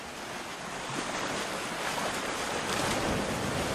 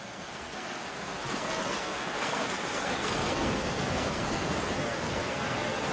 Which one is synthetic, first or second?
second